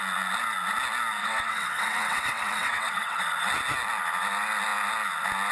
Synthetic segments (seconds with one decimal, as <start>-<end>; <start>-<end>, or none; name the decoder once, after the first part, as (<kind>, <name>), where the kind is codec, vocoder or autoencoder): 1.2-3.2 (vocoder, WaveNeXt)